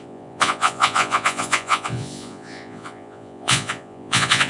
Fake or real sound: fake